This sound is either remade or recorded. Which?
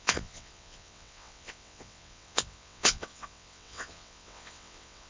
remade